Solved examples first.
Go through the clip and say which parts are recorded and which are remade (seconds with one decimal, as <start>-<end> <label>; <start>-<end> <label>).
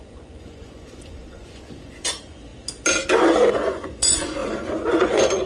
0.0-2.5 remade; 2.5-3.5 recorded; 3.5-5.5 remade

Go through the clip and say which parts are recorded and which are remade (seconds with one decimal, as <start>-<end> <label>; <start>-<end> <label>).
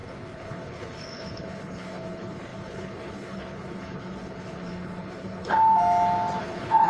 0.0-5.5 remade; 5.5-6.4 recorded; 6.4-6.9 remade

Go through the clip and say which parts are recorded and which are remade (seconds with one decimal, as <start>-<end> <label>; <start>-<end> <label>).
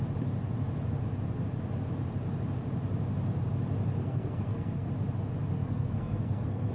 0.0-4.0 recorded; 4.0-4.9 remade; 4.9-5.6 recorded; 5.6-6.7 remade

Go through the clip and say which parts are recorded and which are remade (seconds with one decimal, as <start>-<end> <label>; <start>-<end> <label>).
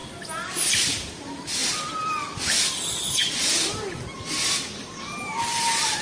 0.0-6.0 recorded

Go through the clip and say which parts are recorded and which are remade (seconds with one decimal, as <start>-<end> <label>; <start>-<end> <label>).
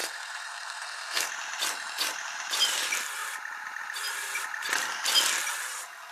0.0-1.3 remade; 1.3-6.1 recorded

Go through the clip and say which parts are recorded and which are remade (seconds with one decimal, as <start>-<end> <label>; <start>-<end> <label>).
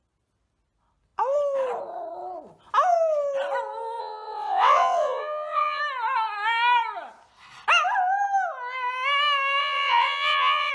0.0-4.0 recorded; 4.0-5.8 remade; 5.8-9.6 recorded; 9.6-10.7 remade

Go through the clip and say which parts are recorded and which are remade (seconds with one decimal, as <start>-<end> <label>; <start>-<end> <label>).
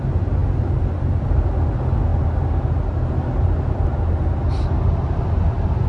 0.0-5.9 recorded